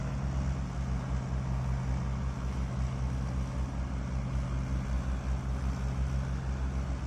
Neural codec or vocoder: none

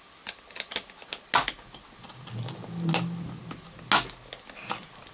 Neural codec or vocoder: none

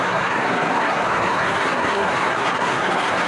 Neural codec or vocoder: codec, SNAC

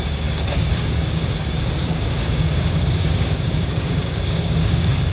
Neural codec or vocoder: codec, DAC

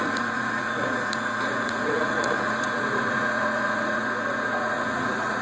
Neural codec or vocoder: vocoder, Vocos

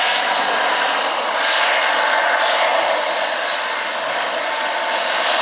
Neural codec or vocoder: none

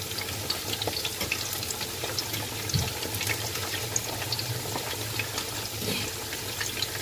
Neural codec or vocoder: none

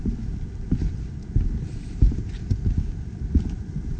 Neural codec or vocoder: none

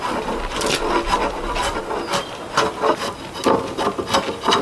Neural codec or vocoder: none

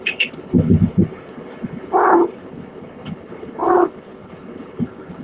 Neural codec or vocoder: codec, HILCodec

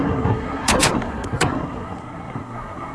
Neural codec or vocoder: codec, SNAC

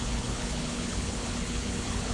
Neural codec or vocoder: codec, HILCodec